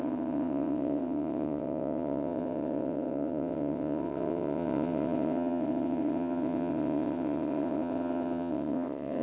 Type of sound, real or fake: fake